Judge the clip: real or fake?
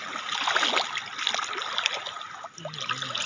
real